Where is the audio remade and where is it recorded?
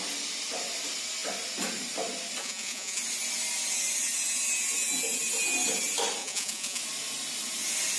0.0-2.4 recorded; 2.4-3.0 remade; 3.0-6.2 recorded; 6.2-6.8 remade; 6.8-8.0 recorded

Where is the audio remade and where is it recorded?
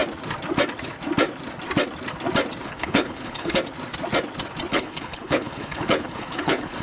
0.0-2.6 recorded; 2.6-3.6 remade; 3.6-4.7 recorded; 4.7-6.8 remade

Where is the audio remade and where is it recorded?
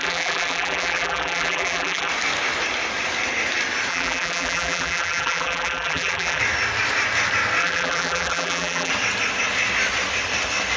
0.0-2.1 remade; 2.1-3.9 recorded; 3.9-6.4 remade; 6.4-7.6 recorded; 7.6-8.9 remade; 8.9-10.8 recorded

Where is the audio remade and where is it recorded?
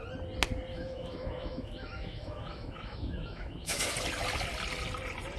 0.0-0.7 recorded; 0.7-3.9 remade; 3.9-5.4 recorded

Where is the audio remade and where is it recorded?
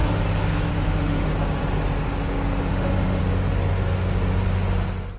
0.0-0.7 recorded; 0.7-1.3 remade; 1.3-2.7 recorded; 2.7-3.2 remade; 3.2-5.2 recorded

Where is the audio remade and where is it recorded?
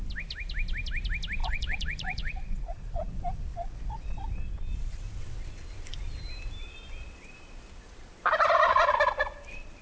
0.0-1.4 recorded; 1.4-3.1 remade; 3.1-3.5 recorded; 3.5-4.4 remade; 4.4-9.8 recorded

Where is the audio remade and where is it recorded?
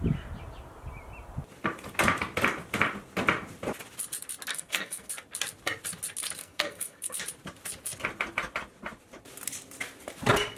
0.0-4.5 recorded; 4.5-5.1 remade; 5.1-6.4 recorded; 6.4-7.2 remade; 7.2-10.6 recorded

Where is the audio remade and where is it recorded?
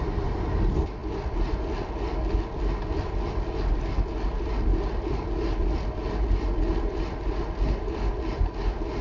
0.0-9.0 recorded